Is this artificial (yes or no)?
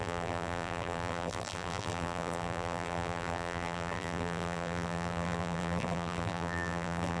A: yes